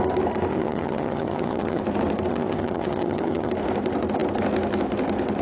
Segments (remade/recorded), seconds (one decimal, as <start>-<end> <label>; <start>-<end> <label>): 0.0-0.5 recorded; 0.5-1.8 remade; 1.8-2.3 recorded; 2.3-3.5 remade; 3.5-5.4 recorded